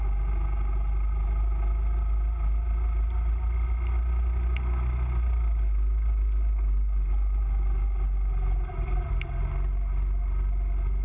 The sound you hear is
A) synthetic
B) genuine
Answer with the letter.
B